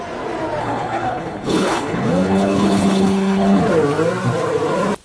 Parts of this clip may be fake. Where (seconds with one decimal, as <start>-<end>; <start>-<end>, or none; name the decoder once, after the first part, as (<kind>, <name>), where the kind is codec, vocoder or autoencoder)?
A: 0.6-3.6 (codec, HILCodec)